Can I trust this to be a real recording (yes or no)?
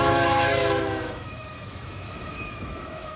no